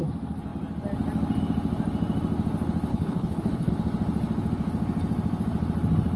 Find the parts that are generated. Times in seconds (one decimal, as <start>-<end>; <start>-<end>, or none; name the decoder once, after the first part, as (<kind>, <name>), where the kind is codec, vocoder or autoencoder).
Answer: 2.9-3.7 (codec, HILCodec)